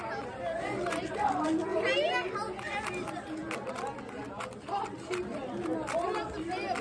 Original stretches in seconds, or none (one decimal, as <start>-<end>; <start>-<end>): 0.0-6.8